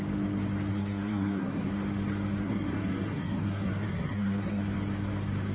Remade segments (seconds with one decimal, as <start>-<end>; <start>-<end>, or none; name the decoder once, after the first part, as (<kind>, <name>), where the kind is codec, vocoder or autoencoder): 0.7-1.7 (codec, SNAC); 2.4-4.6